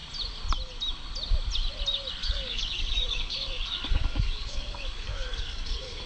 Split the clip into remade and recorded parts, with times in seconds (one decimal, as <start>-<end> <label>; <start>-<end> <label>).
0.0-2.2 recorded; 2.2-6.1 remade